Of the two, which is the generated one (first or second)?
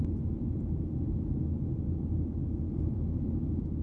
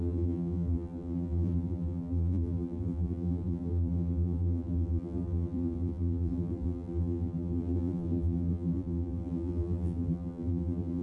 second